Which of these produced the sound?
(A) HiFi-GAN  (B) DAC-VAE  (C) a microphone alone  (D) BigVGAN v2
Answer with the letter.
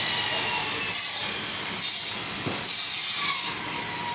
C